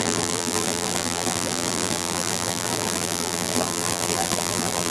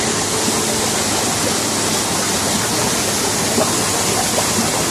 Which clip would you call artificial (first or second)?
first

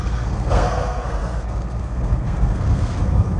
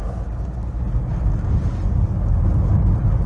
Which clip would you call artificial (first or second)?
first